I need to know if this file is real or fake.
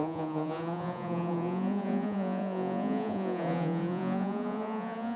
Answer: fake